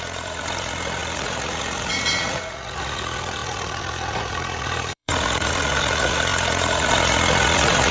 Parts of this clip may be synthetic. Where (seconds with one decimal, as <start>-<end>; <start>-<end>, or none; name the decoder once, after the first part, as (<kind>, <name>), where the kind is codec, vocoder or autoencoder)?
0.0-7.9 (vocoder, Vocos)